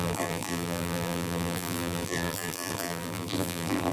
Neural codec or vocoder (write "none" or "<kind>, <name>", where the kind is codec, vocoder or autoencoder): vocoder, BigVGAN v2